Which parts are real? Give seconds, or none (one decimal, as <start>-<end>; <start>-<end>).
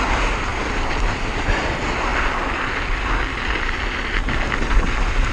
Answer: 0.0-5.3